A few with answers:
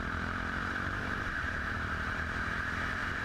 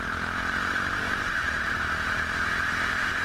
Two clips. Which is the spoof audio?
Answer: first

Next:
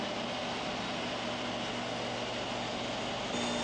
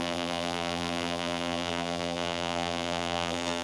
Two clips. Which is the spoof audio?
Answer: second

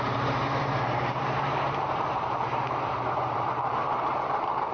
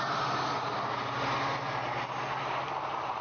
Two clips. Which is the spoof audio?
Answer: first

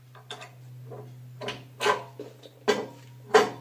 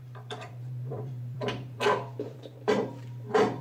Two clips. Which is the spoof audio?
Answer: second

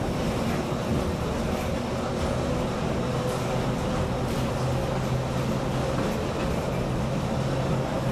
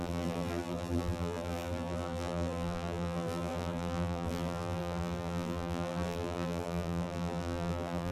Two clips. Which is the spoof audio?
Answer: second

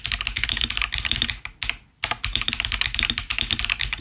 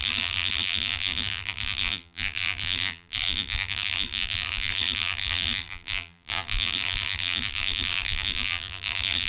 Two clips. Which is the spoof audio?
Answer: second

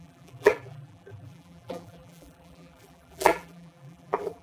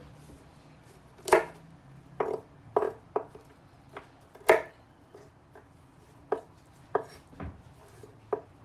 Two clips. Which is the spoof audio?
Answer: first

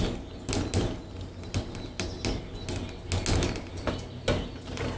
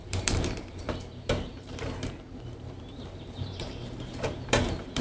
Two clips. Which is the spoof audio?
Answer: second